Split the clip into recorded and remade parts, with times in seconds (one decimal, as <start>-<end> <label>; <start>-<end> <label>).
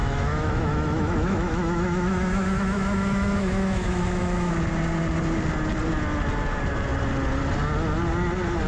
0.0-4.5 remade; 4.5-8.7 recorded